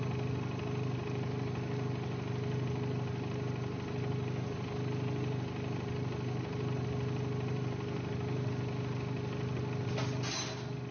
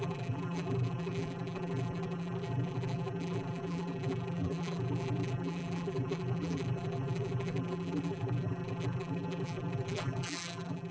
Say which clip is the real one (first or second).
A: first